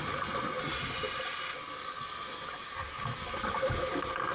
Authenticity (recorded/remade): recorded